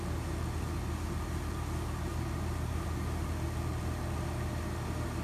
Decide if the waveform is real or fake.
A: real